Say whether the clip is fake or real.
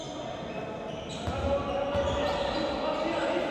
real